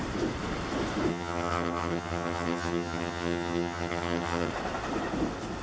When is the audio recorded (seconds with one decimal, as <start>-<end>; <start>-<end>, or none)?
0.0-1.1; 4.5-5.6